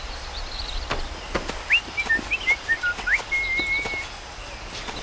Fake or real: real